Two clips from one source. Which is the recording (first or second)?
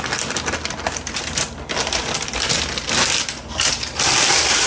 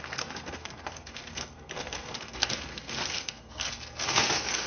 first